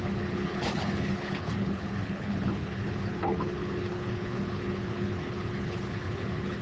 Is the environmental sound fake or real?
fake